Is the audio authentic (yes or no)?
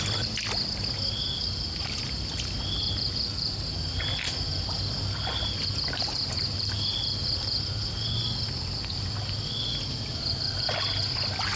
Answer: yes